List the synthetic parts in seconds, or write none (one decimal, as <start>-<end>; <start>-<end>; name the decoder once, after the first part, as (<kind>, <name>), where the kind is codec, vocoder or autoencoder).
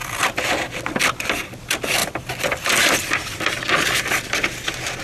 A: 0.0-0.8 (vocoder, BigVGAN v2)